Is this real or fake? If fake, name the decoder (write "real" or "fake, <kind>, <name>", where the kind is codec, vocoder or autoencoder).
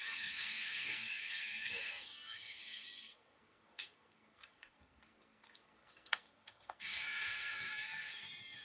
fake, codec, SNAC